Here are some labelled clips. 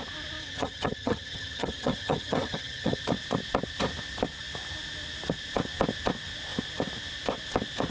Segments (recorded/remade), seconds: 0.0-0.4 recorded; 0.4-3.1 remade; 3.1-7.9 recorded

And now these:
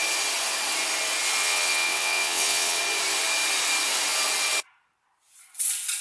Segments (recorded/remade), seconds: 0.0-1.4 recorded; 1.4-2.8 remade; 2.8-6.0 recorded

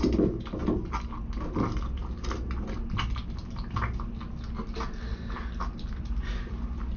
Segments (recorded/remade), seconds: 0.0-7.0 recorded

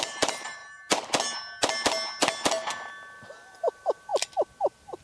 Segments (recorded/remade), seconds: 0.0-0.6 remade; 0.6-3.6 recorded; 3.6-4.1 remade; 4.1-5.0 recorded

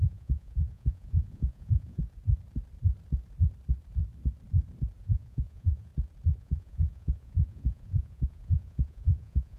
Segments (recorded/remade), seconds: 0.0-2.0 remade; 2.0-5.0 recorded; 5.0-5.9 remade; 5.9-6.4 recorded; 6.4-9.6 remade

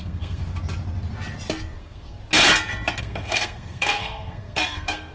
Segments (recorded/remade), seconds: 0.0-0.4 remade; 0.4-1.8 recorded; 1.8-2.2 remade; 2.2-3.0 recorded; 3.0-5.1 remade

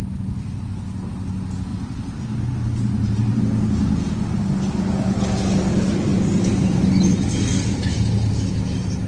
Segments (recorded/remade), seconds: 0.0-1.7 recorded; 1.7-3.4 remade; 3.4-9.1 recorded

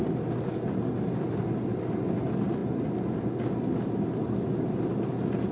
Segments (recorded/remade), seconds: 0.0-5.5 recorded